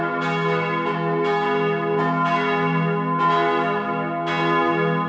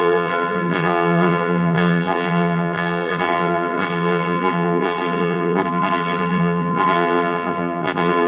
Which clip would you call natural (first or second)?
first